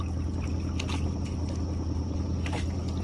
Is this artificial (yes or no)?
no